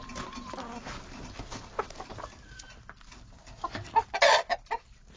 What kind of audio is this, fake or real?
real